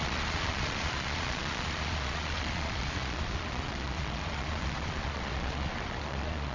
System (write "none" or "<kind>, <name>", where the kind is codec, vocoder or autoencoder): vocoder, Vocos